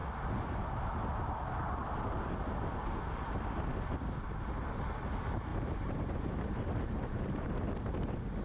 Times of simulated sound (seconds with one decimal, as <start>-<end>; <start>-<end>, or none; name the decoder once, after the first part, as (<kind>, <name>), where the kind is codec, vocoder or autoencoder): 5.5-7.5 (vocoder, BigVGAN v2)